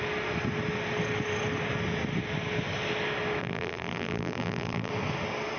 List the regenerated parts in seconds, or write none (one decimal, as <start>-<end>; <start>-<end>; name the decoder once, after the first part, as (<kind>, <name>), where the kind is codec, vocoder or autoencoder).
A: 3.4-4.9 (vocoder, BigVGAN v2)